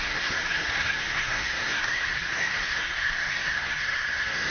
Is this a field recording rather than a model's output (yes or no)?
no